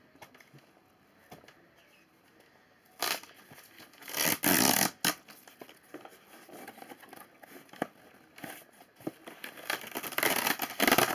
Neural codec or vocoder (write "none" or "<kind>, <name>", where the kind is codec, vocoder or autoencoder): none